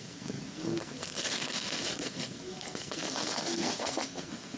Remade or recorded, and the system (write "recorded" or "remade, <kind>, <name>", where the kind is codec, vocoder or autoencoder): remade, codec, SNAC